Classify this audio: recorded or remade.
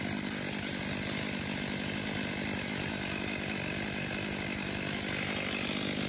recorded